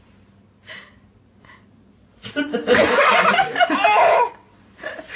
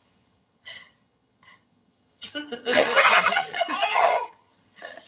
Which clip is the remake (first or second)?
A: second